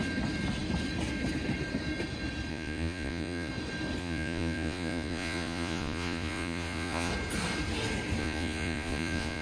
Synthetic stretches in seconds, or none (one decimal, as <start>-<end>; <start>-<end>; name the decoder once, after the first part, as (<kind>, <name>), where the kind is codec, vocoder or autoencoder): 2.5-3.5 (vocoder, Vocos); 4.0-7.1; 8.2-9.4